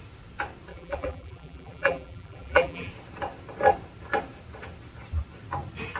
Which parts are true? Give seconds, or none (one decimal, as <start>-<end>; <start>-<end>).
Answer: 0.0-0.7; 2.9-6.0